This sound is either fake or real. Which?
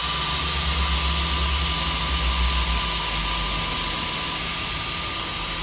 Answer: real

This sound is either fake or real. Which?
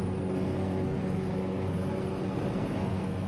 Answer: fake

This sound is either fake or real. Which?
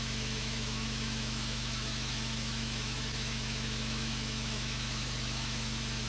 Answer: fake